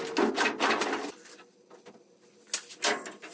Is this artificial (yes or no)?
no